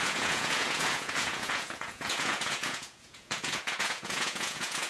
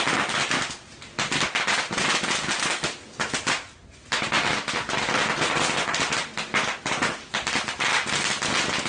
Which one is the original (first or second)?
second